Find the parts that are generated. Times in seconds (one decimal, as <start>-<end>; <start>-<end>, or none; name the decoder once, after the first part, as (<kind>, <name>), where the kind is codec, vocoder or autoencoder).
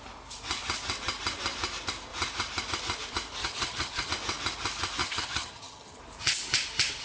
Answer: 3.4-4.1 (vocoder, HiFi-GAN); 5.0-6.0